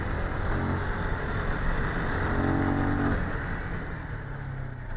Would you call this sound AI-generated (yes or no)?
no